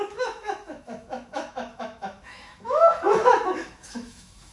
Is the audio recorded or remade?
remade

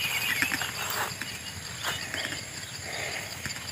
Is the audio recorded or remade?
recorded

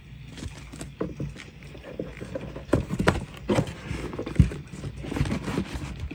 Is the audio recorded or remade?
recorded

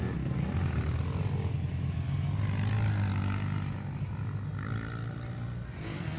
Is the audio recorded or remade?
recorded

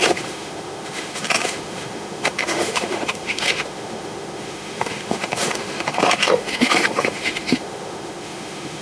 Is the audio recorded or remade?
remade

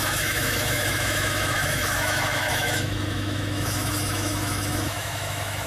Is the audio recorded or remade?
remade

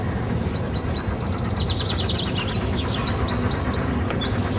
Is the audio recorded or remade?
recorded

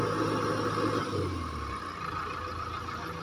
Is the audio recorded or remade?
recorded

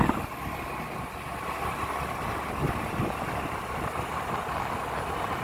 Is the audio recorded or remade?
recorded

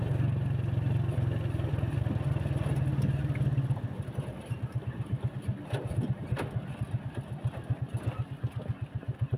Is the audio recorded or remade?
recorded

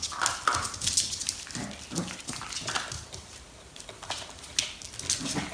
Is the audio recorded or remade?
recorded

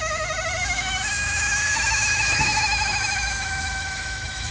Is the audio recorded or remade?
remade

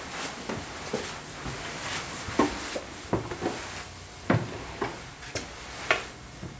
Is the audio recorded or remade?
recorded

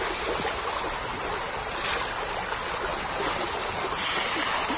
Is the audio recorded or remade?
recorded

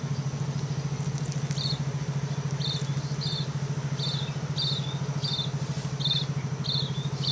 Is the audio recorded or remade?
recorded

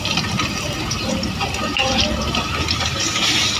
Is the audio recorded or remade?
recorded